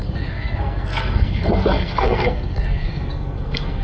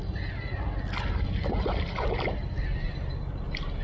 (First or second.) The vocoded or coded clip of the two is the first